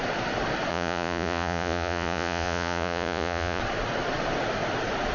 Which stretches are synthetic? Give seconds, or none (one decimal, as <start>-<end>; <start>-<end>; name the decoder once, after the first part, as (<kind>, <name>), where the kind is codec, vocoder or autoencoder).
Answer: 0.7-3.6 (vocoder, Vocos)